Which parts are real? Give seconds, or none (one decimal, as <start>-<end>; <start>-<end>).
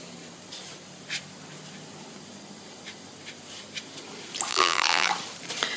0.0-4.5; 5.1-5.8